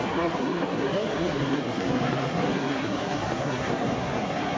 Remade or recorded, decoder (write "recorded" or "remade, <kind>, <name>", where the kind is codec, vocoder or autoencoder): remade, codec, SNAC